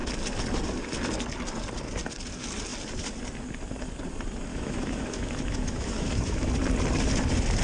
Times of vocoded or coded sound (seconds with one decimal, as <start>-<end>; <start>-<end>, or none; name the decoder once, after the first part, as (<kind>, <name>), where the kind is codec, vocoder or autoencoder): 4.5-6.5 (autoencoder, DAC-VAE)